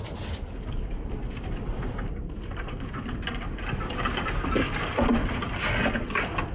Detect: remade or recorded recorded